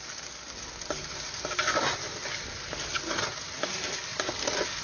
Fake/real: real